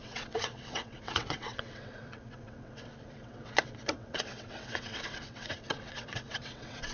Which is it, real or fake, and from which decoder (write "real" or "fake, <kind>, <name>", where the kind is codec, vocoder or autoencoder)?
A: fake, vocoder, WaveNeXt